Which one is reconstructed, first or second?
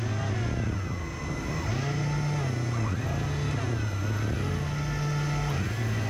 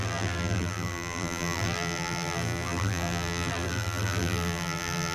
second